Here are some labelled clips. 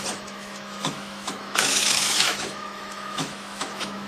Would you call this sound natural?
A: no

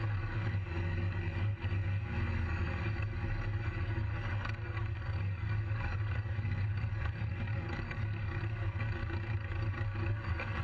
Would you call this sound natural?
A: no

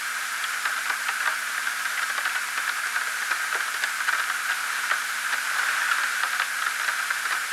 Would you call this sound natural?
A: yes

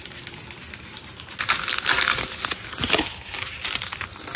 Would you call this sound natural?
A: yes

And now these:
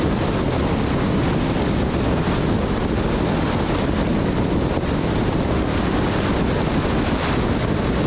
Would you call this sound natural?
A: yes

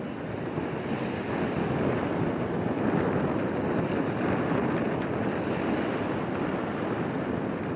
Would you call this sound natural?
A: yes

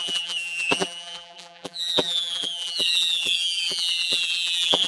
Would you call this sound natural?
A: no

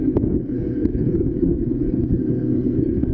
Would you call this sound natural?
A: no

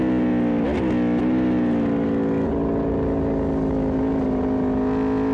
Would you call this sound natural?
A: yes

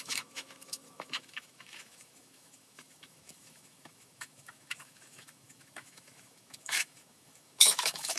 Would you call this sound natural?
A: no